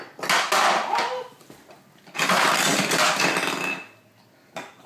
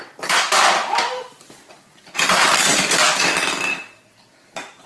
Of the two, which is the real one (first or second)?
first